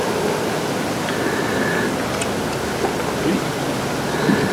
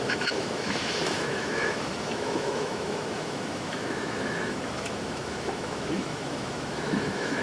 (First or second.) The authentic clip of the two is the first